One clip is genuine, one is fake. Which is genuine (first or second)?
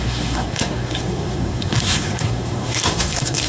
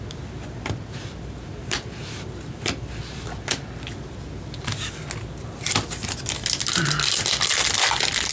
second